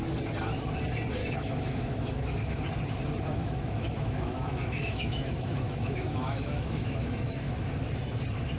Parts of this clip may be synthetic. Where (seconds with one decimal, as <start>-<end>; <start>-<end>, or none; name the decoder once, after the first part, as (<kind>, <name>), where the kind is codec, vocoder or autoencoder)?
1.2-2.6 (autoencoder, DAC-VAE); 3.4-7.7